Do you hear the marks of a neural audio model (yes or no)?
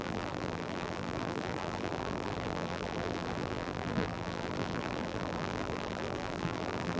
yes